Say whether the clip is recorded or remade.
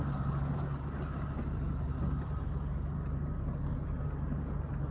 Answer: recorded